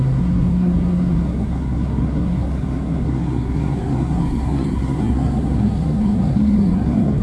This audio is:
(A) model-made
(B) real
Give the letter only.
A